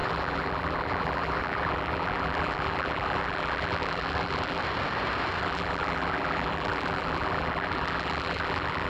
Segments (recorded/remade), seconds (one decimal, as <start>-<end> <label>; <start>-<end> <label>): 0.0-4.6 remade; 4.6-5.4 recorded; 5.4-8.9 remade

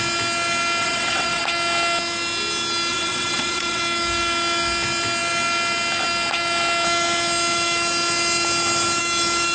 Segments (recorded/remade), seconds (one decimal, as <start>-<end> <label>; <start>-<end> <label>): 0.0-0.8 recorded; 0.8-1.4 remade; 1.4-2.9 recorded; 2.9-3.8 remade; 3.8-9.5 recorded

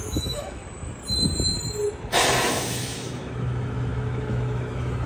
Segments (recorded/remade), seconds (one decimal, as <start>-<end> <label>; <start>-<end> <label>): 0.0-0.6 remade; 0.6-2.5 recorded; 2.5-5.1 remade

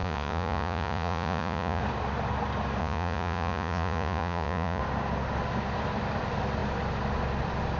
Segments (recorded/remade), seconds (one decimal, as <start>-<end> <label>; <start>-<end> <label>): 0.0-1.8 remade; 1.8-2.8 recorded; 2.8-4.8 remade; 4.8-7.8 recorded